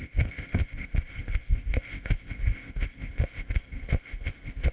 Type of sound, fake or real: fake